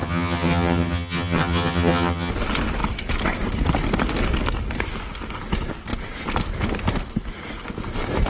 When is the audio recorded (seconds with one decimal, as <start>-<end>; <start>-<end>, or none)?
2.3-8.3